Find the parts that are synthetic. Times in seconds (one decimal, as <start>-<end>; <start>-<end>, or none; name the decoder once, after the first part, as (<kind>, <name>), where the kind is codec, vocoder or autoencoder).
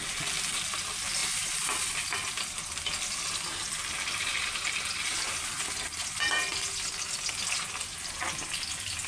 none